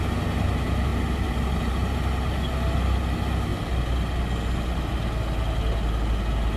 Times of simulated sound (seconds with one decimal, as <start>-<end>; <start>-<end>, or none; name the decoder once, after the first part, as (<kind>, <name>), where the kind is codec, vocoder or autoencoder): none